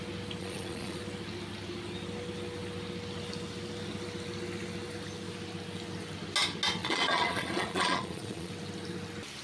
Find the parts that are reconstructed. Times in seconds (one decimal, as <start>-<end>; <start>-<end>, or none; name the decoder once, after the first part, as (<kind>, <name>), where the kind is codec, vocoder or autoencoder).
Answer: 0.4-1.0 (vocoder, Vocos); 6.8-8.5